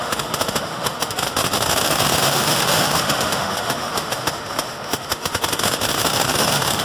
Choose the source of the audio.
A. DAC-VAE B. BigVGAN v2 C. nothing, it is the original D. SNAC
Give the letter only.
A